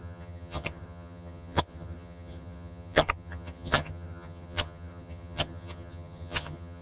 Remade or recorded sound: remade